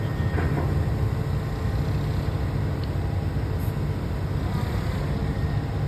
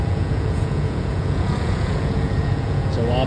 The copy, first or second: second